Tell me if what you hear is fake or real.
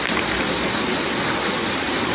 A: real